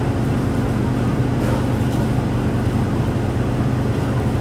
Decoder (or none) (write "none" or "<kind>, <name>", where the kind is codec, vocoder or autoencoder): none